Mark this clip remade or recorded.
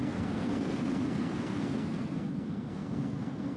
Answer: remade